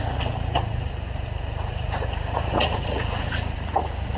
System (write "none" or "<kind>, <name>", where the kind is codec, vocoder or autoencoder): vocoder, Vocos